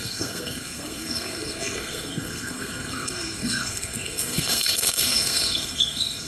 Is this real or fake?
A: fake